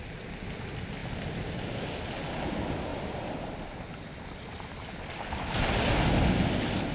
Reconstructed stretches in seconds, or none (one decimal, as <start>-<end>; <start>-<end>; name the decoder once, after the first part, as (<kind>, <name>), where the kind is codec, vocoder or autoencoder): none